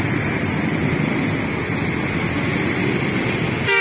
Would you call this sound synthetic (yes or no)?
no